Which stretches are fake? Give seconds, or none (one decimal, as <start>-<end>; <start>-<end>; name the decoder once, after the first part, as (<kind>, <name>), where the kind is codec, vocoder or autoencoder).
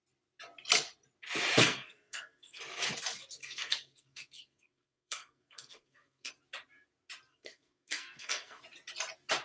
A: 1.6-2.6 (codec, SNAC); 3.4-6.3; 7.3-8.6